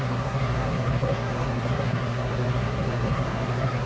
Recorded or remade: remade